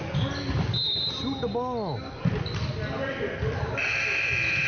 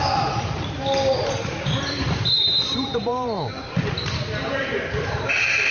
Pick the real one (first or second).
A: first